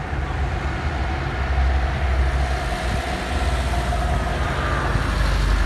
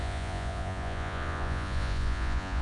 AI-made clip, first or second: second